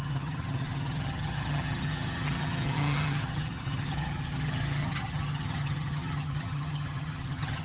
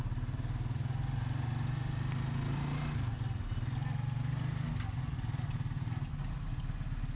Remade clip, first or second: first